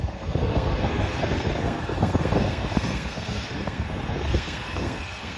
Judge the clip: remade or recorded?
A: remade